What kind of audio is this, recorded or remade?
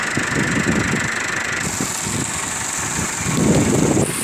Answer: recorded